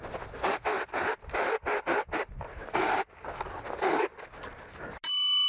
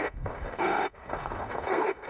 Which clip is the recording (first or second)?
first